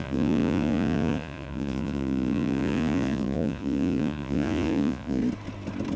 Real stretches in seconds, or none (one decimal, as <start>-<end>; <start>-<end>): 5.2-6.0